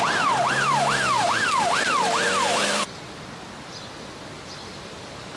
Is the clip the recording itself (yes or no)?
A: yes